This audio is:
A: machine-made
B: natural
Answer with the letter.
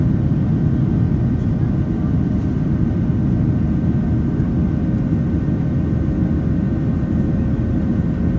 B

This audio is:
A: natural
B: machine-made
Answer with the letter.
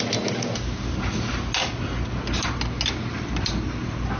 A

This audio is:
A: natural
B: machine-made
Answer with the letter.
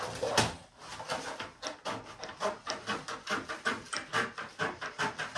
A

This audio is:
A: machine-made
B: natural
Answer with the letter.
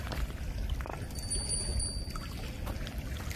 B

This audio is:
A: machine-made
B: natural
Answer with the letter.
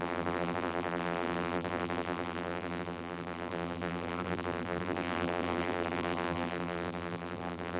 A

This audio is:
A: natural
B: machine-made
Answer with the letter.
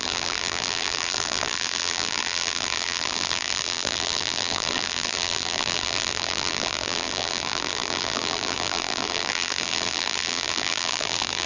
B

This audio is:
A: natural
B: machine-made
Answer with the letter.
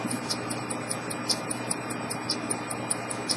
A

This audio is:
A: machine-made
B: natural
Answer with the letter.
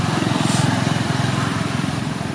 A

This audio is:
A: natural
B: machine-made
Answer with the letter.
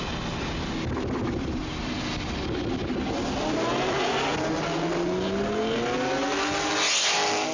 A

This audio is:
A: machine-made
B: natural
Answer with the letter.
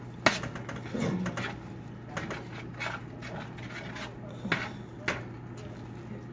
B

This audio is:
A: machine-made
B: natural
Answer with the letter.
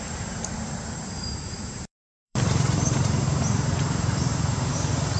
A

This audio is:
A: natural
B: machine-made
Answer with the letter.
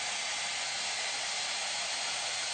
B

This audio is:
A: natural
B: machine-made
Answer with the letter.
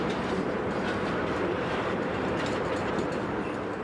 B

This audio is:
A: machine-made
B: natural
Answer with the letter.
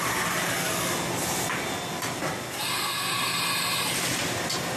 B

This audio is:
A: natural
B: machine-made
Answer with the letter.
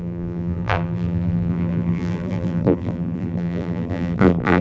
B